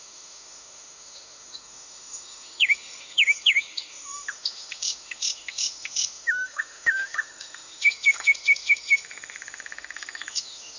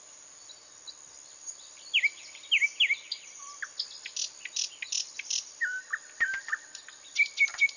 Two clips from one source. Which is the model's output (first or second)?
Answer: first